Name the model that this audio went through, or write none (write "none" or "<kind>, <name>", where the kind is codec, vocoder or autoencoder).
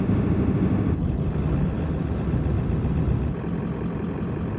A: none